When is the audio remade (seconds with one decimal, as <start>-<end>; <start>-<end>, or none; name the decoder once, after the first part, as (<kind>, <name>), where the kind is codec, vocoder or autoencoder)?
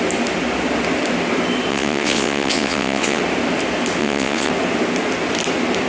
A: 1.7-3.2 (vocoder, WaveNeXt); 4.0-4.5